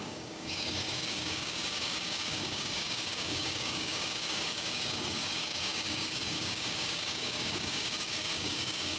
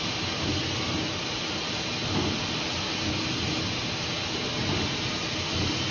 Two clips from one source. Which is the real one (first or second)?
second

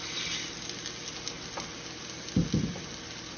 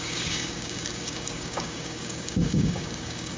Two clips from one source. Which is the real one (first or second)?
first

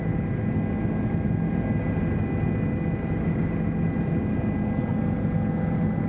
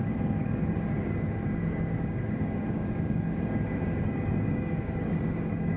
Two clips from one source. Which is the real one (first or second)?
first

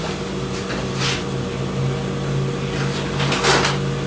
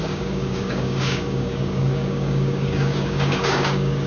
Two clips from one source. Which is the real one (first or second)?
first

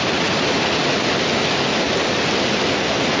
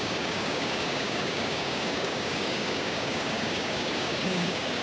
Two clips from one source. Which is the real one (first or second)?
first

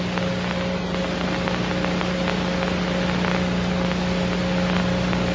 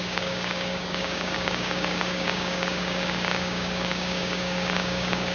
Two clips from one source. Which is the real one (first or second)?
first